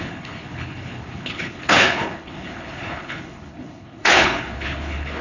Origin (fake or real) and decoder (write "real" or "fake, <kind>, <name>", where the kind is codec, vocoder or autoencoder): fake, codec, HILCodec